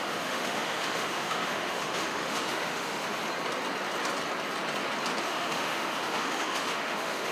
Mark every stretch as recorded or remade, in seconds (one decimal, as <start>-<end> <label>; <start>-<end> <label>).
0.0-3.2 remade; 3.2-5.2 recorded; 5.2-7.3 remade